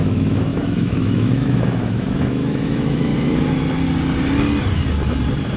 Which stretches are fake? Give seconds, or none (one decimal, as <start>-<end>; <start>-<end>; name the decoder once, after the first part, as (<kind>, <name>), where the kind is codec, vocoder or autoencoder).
0.0-3.1 (autoencoder, DAC-VAE)